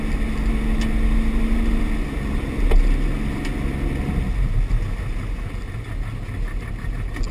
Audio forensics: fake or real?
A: real